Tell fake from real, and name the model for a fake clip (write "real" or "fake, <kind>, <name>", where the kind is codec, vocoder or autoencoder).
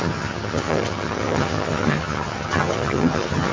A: fake, vocoder, HiFi-GAN